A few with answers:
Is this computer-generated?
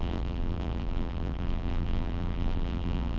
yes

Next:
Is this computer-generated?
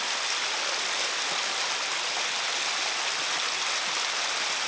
no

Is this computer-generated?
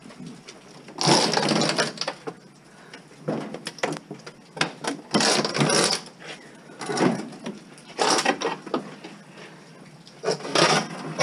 no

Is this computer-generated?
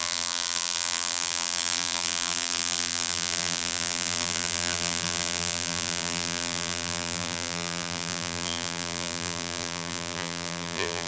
yes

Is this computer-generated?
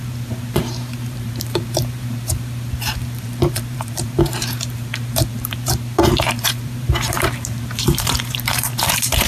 yes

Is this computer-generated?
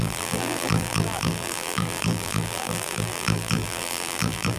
yes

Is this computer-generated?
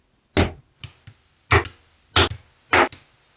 no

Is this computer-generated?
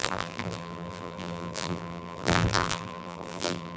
yes